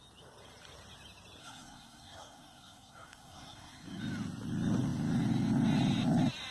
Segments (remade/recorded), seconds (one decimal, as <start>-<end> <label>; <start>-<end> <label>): 0.0-1.4 recorded; 1.4-4.0 remade; 4.0-6.5 recorded